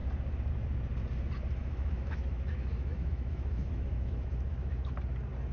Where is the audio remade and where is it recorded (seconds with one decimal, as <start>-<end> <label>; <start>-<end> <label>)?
0.0-1.6 recorded; 1.6-4.9 remade; 4.9-5.5 recorded